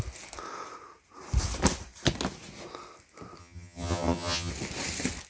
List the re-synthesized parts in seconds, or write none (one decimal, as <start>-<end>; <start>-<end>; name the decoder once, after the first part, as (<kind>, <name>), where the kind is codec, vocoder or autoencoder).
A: 3.4-4.5 (vocoder, HiFi-GAN)